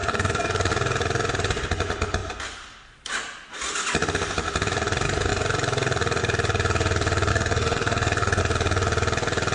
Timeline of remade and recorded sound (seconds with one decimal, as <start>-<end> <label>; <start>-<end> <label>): 0.0-0.7 remade; 0.7-7.3 recorded; 7.3-8.4 remade; 8.4-9.5 recorded